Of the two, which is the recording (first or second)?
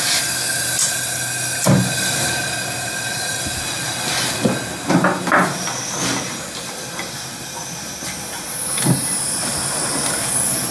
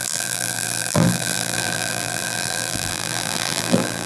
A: first